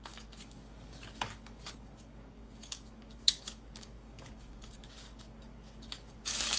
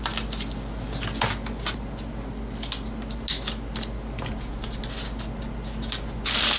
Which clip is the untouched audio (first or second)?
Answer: second